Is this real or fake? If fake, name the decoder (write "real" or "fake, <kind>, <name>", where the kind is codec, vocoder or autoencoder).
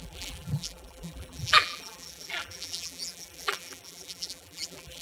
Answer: fake, vocoder, BigVGAN v2